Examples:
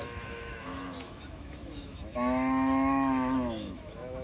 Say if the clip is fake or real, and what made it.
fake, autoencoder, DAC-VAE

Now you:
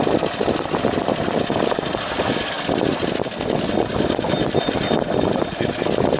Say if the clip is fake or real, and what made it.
real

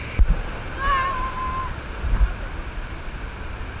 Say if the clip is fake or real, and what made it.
real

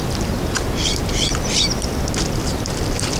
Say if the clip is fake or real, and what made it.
real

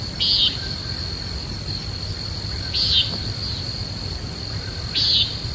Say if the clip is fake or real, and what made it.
real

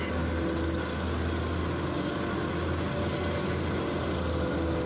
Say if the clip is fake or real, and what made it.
real